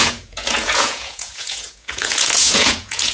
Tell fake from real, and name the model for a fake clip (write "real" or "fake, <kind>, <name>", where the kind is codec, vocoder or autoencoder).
fake, vocoder, Vocos